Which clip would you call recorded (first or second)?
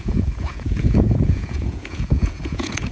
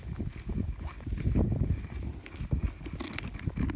second